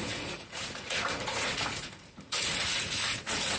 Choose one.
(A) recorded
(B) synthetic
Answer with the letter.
B